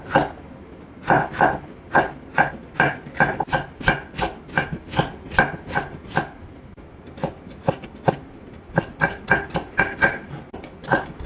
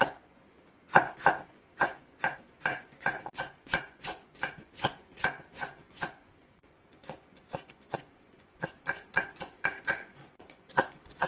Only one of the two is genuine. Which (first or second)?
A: first